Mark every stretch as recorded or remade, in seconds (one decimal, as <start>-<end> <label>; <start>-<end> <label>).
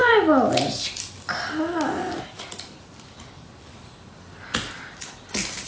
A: 0.0-5.7 recorded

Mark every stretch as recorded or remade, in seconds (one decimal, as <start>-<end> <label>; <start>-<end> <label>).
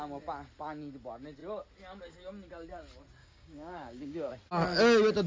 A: 0.0-3.2 recorded; 3.2-4.3 remade; 4.3-5.3 recorded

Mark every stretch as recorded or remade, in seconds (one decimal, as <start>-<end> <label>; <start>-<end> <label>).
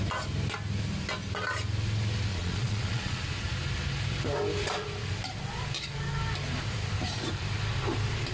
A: 0.0-2.3 recorded; 2.3-3.2 remade; 3.2-8.3 recorded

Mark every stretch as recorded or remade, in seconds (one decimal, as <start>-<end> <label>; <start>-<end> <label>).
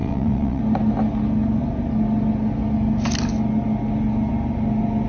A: 0.0-0.6 remade; 0.6-5.1 recorded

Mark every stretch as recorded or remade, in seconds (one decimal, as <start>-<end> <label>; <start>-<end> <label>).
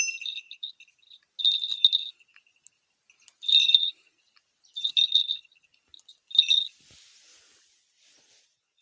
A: 0.0-8.8 recorded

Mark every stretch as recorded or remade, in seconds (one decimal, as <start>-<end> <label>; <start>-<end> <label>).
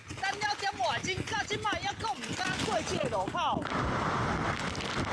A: 0.0-5.1 recorded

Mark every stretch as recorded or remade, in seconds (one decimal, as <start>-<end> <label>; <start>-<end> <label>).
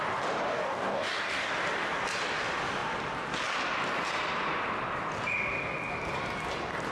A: 0.0-0.5 recorded; 0.5-1.5 remade; 1.5-6.9 recorded